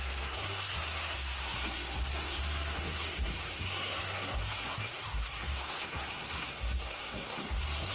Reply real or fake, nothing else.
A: fake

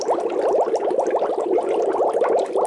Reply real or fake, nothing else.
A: real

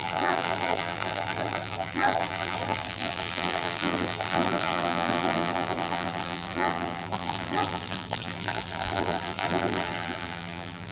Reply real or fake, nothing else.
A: fake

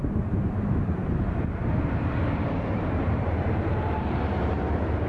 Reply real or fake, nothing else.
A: fake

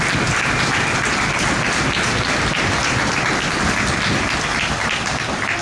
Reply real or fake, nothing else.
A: real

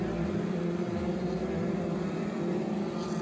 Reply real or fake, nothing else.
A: fake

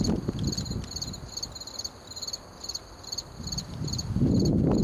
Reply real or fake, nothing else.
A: real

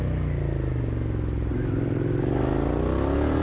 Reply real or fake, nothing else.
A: real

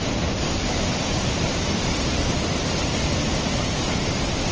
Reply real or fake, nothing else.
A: real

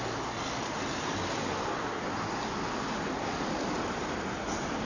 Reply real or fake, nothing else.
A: real